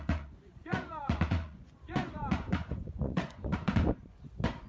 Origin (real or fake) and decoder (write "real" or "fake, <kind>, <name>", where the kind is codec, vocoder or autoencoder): fake, vocoder, Vocos